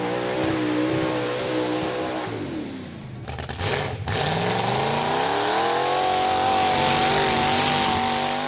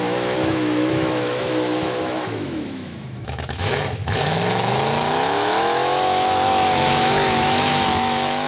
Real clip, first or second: first